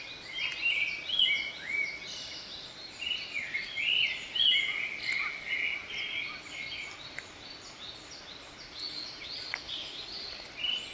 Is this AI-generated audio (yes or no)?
no